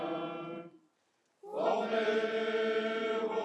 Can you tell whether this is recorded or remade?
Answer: recorded